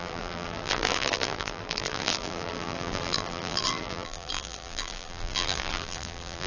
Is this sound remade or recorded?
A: remade